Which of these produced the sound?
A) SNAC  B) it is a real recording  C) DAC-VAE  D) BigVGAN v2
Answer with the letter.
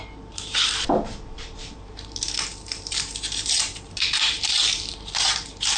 D